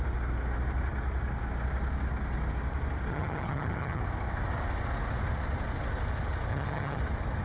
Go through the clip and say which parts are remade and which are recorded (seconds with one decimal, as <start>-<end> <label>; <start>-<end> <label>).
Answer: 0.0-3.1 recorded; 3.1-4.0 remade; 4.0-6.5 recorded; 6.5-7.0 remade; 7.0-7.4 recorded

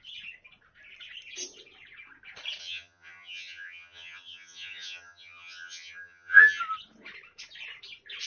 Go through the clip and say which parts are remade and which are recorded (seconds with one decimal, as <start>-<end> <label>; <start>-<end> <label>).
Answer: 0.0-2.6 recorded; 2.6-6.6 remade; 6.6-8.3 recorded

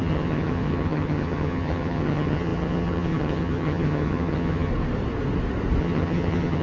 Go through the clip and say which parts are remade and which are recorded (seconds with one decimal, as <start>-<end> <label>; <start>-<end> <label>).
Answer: 0.0-4.7 remade; 4.7-5.8 recorded; 5.8-6.6 remade